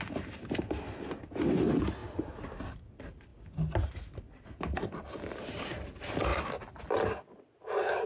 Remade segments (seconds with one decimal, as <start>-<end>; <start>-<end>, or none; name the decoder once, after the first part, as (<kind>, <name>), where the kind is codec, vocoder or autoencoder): none